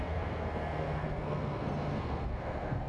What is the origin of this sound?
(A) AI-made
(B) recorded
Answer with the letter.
A